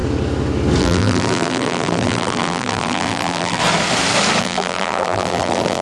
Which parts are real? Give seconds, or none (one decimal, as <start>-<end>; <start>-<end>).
0.0-0.8; 3.6-4.4